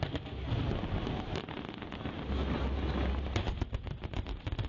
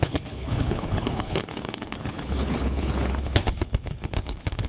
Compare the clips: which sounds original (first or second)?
first